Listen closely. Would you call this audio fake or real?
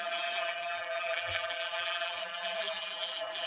fake